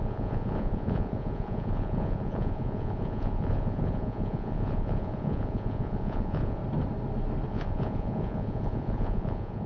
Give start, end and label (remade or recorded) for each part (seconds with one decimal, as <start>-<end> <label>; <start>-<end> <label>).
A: 0.0-6.6 remade; 6.6-7.5 recorded; 7.5-9.7 remade